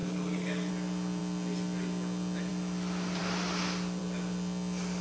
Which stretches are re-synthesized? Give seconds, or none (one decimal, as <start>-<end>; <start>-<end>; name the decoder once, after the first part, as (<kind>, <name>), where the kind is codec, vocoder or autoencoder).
0.0-0.7 (codec, SNAC)